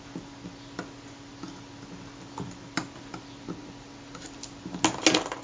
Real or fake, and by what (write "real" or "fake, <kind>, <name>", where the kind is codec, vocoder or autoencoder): real